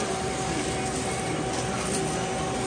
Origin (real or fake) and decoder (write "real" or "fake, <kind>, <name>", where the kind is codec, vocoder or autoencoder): real